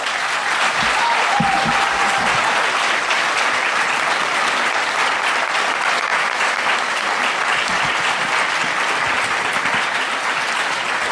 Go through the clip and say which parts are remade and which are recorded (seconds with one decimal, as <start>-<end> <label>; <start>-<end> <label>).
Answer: 0.0-11.1 recorded